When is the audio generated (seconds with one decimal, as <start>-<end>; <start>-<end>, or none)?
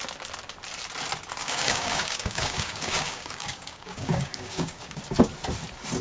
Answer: 1.4-5.0